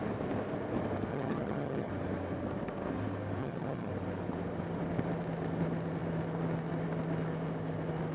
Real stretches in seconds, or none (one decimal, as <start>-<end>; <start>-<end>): 0.0-1.1; 1.9-3.4; 3.9-8.1